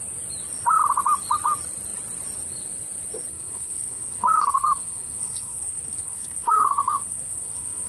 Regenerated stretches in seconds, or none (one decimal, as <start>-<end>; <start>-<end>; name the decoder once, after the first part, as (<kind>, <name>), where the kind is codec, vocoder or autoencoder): 3.3-7.9 (codec, SNAC)